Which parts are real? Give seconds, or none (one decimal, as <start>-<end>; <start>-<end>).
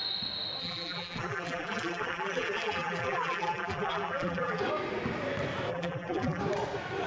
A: 0.0-0.6; 4.6-5.7; 6.4-7.1